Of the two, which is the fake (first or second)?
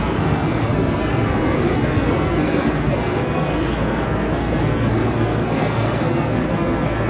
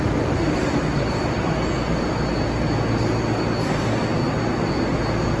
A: first